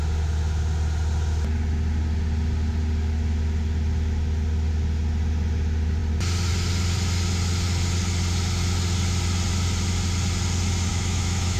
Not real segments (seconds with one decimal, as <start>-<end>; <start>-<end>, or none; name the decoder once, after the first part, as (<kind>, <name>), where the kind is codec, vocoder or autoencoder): 10.9-11.6 (autoencoder, DAC-VAE)